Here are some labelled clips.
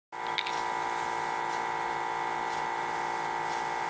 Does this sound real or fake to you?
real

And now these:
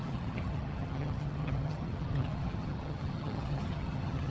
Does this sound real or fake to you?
fake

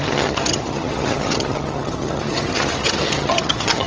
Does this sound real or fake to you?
fake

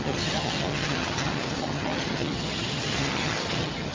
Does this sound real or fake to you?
fake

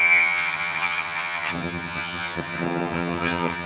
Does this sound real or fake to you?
fake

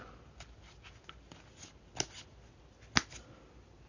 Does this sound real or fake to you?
real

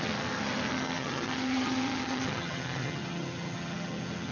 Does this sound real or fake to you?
fake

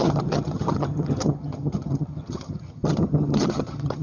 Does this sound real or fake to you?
fake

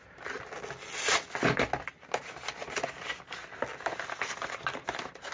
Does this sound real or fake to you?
real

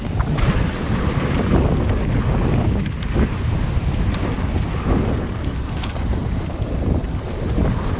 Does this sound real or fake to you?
real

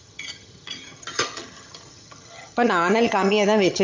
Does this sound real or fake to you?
fake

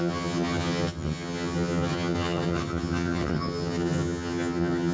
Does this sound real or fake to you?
fake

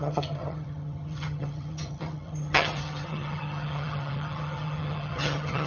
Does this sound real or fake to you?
fake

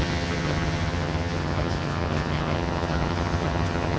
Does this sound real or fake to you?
fake